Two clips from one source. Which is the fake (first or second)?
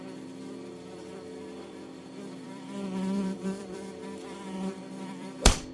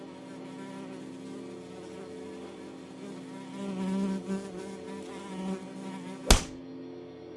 first